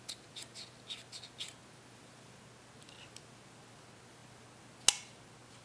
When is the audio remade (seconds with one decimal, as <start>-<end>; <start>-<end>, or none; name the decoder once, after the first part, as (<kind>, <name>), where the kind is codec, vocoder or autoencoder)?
none